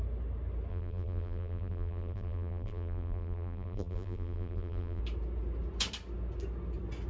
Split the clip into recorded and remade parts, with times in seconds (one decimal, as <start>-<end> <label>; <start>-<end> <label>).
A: 0.0-0.7 recorded; 0.7-5.0 remade; 5.0-7.1 recorded